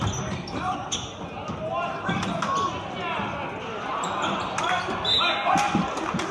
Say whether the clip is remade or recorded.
recorded